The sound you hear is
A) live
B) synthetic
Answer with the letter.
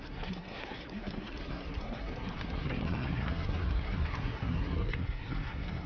B